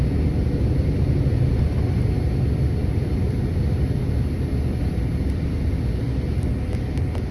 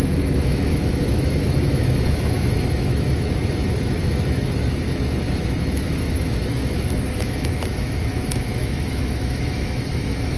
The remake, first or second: second